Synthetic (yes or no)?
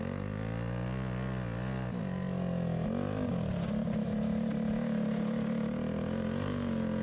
no